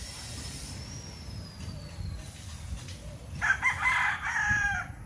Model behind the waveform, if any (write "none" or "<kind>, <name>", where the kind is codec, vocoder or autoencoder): vocoder, BigVGAN v2